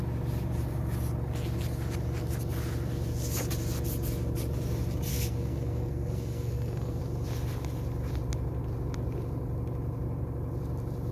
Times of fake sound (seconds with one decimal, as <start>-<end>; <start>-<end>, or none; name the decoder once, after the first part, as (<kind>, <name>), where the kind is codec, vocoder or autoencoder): 5.1-7.0 (codec, SNAC)